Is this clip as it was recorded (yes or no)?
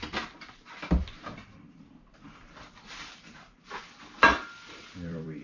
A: no